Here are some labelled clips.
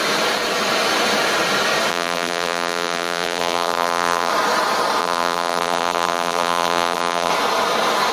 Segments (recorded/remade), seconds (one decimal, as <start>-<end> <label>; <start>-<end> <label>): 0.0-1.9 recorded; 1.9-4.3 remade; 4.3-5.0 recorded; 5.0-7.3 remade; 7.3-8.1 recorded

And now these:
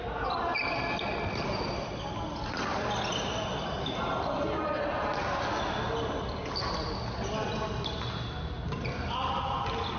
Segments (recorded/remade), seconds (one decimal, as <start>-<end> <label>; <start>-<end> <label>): 0.0-0.5 recorded; 0.5-3.5 remade; 3.5-10.0 recorded

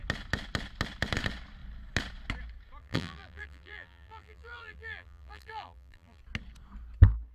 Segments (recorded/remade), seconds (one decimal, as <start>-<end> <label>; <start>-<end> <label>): 0.0-2.8 recorded; 2.8-6.2 remade; 6.2-7.3 recorded

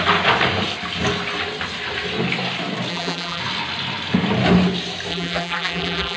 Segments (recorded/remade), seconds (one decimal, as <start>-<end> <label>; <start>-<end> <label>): 0.0-2.9 recorded; 2.9-3.4 remade; 3.4-5.1 recorded; 5.1-6.2 remade